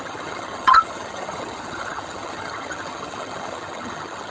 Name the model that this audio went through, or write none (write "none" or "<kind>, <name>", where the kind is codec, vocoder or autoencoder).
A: vocoder, HiFi-GAN